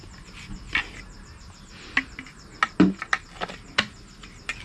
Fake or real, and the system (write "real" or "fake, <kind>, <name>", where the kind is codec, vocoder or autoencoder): real